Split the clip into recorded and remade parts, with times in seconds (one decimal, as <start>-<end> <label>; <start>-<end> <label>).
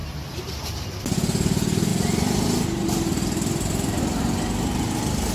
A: 0.0-0.5 remade; 0.5-1.9 recorded; 1.9-4.0 remade; 4.0-5.3 recorded